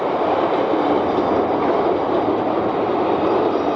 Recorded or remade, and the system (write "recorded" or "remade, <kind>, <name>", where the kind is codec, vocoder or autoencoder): recorded